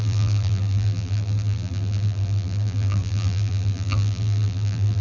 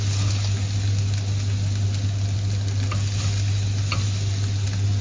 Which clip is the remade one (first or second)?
first